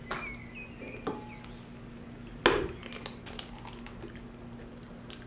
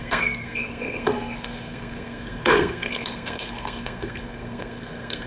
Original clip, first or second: first